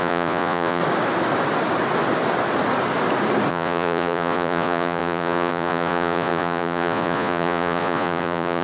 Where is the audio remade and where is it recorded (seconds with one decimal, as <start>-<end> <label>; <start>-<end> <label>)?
0.0-0.8 remade; 0.8-3.5 recorded; 3.5-8.6 remade